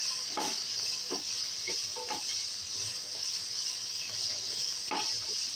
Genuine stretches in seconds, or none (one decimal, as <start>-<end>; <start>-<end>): 1.7-2.5; 4.9-5.6